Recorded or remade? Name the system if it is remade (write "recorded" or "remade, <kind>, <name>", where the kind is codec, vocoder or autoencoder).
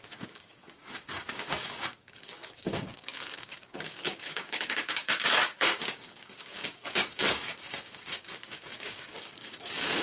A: remade, codec, DAC